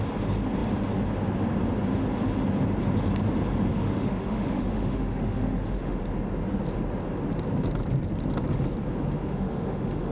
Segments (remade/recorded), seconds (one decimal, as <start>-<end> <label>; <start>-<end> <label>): 0.0-3.7 recorded; 3.7-6.0 remade; 6.0-9.2 recorded; 9.2-10.1 remade